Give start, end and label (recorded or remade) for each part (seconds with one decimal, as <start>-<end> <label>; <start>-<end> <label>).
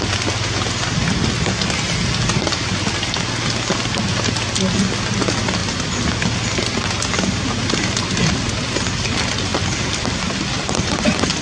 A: 0.0-11.4 recorded